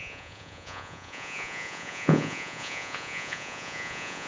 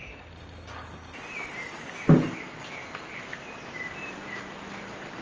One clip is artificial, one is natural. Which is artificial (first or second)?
first